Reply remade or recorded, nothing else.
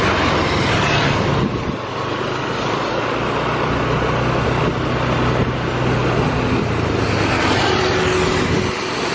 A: recorded